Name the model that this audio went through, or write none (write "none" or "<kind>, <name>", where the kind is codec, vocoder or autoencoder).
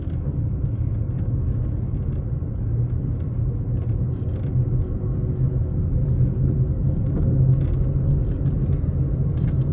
none